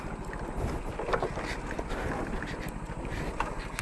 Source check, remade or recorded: recorded